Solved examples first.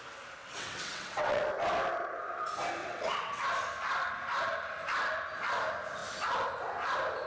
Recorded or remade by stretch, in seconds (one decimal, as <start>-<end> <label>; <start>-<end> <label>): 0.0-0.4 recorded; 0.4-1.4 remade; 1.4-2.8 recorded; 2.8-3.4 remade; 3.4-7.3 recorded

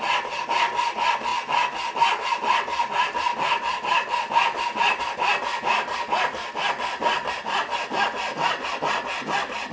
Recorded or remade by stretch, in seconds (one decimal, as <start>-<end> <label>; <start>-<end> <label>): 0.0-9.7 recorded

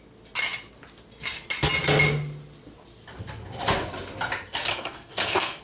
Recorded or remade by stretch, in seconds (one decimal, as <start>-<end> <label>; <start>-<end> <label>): 0.0-4.7 recorded; 4.7-5.6 remade

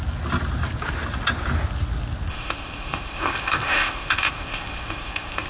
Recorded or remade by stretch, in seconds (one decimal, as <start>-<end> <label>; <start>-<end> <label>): 0.0-2.3 recorded; 2.3-5.5 remade